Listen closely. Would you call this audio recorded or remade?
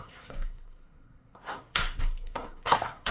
remade